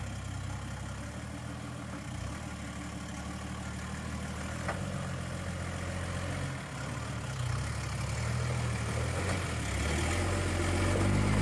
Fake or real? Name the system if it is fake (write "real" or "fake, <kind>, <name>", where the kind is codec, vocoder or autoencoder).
real